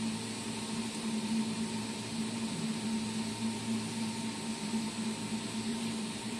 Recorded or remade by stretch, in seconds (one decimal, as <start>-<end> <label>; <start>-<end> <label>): 0.0-5.7 recorded; 5.7-6.4 remade